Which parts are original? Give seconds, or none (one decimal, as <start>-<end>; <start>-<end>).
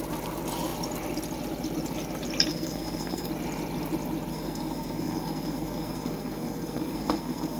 0.0-2.5; 3.3-4.3